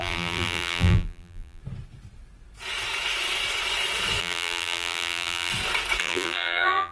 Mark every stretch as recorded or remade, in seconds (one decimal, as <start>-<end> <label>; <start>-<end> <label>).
0.0-1.6 remade; 1.6-4.2 recorded; 4.2-5.5 remade; 5.5-6.0 recorded; 6.0-6.9 remade